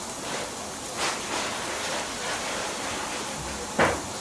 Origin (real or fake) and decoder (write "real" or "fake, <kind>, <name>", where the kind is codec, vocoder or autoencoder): real